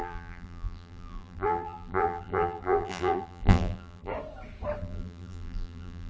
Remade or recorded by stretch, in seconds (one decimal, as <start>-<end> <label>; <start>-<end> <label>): 0.0-4.1 remade; 4.1-4.8 recorded; 4.8-6.1 remade